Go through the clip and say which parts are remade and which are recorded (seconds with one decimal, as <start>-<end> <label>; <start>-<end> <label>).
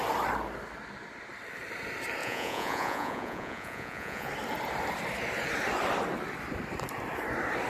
0.0-2.2 recorded; 2.2-4.3 remade; 4.3-7.7 recorded